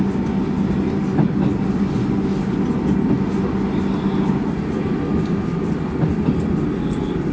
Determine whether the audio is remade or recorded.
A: recorded